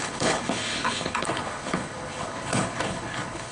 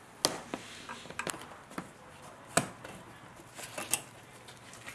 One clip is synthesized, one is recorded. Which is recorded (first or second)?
second